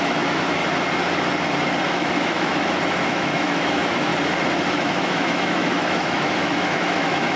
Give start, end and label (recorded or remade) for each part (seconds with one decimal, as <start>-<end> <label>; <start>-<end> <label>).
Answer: 0.0-0.6 remade; 0.6-1.9 recorded; 1.9-2.5 remade; 2.5-3.1 recorded; 3.1-4.1 remade; 4.1-4.7 recorded; 4.7-7.4 remade